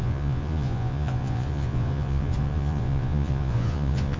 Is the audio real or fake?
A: fake